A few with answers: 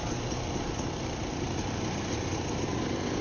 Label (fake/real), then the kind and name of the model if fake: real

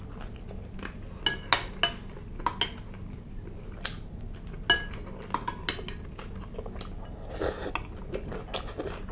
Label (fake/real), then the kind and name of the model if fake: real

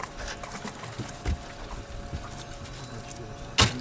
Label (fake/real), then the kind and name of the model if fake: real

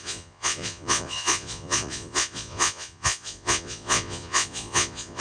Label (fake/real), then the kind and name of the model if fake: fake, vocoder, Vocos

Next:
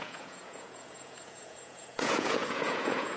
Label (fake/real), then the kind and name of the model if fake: fake, vocoder, Vocos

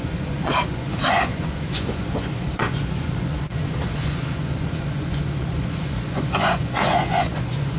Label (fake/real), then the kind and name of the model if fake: fake, vocoder, Vocos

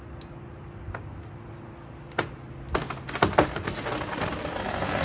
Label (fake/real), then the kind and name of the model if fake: real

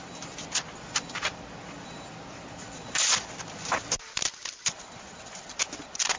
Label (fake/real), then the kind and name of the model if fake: real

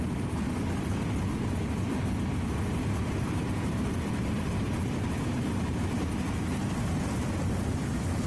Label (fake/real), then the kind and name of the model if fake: real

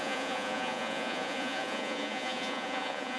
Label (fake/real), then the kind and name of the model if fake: fake, vocoder, Vocos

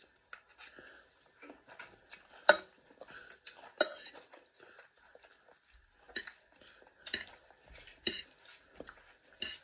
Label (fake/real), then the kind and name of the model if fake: real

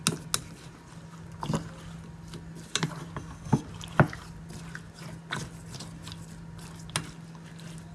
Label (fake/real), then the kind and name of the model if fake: real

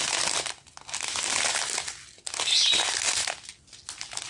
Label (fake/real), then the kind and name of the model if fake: real